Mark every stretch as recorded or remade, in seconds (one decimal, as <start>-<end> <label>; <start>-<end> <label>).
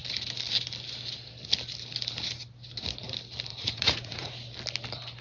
0.0-3.5 recorded; 3.5-4.3 remade; 4.3-5.2 recorded